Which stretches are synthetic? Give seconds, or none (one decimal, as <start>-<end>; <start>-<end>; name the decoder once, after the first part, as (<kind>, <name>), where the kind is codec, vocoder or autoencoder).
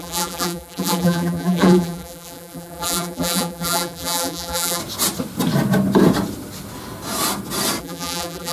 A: 0.0-4.8 (vocoder, BigVGAN v2); 7.8-8.5